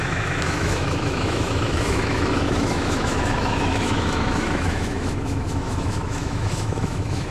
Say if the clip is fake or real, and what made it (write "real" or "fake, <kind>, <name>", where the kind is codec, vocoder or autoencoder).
fake, autoencoder, DAC-VAE